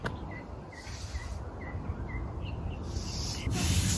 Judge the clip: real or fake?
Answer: real